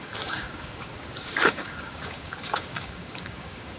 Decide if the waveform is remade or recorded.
remade